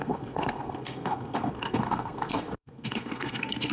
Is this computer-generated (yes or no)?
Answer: yes